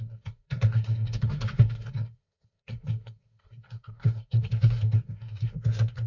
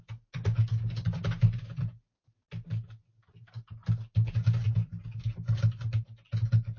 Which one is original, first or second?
second